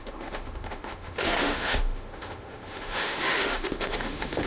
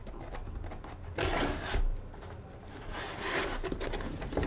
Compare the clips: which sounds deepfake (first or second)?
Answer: first